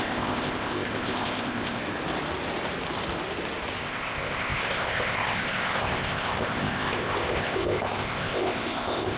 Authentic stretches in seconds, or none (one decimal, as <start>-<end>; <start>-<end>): 1.8-3.8